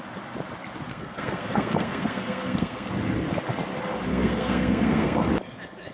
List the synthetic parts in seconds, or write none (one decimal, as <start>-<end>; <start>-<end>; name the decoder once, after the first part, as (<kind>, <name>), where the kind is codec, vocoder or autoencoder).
0.9-2.9 (codec, SNAC); 4.1-5.3